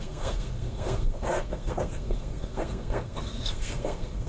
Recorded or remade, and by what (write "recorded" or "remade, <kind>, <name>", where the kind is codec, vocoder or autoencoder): remade, codec, SNAC